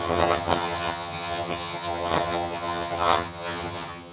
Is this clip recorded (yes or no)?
no